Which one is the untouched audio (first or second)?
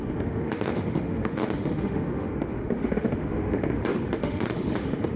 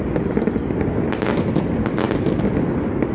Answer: second